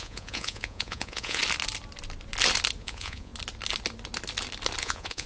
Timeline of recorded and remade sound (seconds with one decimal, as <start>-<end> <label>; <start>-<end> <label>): 0.0-1.4 remade; 1.4-2.8 recorded; 2.8-3.3 remade; 3.3-4.8 recorded; 4.8-5.3 remade